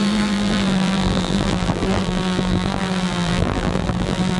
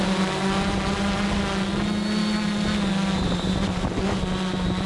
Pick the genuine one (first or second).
second